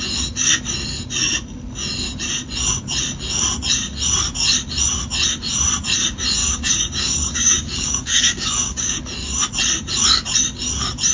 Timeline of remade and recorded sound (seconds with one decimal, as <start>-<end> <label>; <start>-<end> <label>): 0.0-6.4 recorded; 6.4-9.0 remade; 9.0-11.1 recorded